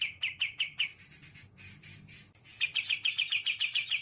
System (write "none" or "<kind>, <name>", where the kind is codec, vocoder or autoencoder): none